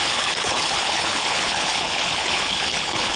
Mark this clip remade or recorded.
remade